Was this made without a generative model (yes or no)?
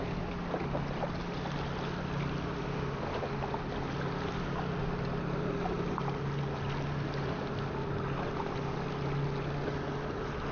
yes